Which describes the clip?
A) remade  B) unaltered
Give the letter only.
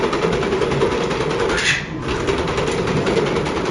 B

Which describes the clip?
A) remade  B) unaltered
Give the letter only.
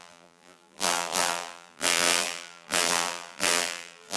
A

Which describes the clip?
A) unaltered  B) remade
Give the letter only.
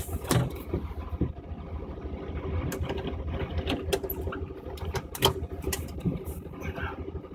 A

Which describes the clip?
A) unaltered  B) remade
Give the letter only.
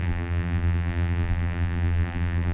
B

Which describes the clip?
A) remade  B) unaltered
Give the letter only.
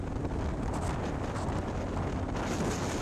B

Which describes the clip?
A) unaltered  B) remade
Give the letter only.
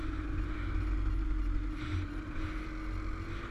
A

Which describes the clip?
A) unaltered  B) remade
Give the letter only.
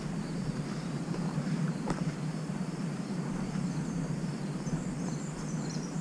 B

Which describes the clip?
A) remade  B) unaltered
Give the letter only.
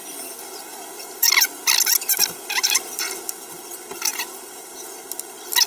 B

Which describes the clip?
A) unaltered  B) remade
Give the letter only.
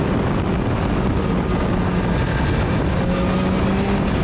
A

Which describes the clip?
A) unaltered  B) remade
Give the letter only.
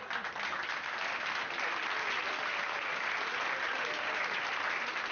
A